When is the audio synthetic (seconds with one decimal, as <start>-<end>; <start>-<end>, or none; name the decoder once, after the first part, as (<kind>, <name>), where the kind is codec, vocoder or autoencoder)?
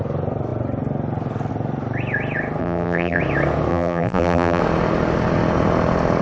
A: 2.6-3.2 (vocoder, BigVGAN v2); 3.7-4.6